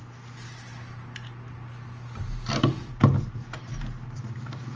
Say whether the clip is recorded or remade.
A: recorded